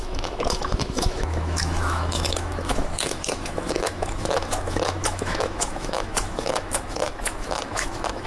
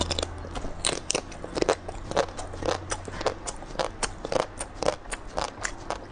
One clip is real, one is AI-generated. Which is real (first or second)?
second